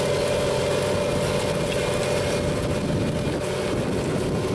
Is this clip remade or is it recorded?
recorded